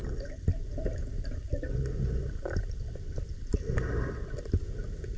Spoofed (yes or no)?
no